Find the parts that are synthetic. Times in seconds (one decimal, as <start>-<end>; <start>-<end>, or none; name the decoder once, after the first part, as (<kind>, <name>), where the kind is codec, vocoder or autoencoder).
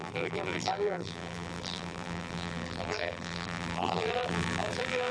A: 0.0-5.1 (vocoder, BigVGAN v2)